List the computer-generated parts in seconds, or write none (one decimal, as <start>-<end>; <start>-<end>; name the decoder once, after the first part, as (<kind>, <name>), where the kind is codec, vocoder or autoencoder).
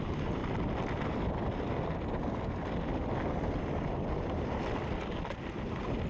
none